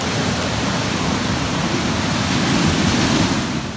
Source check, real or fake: fake